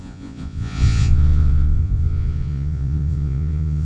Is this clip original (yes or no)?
no